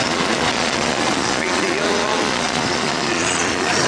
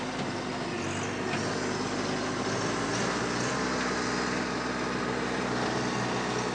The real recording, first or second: second